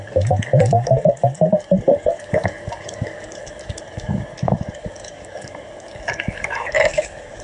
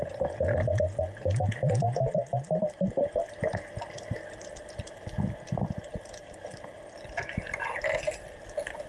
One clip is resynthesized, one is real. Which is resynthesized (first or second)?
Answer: first